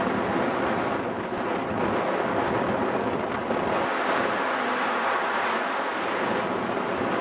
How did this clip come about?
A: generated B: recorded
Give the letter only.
B